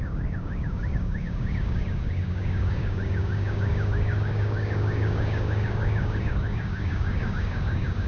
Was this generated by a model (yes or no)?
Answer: yes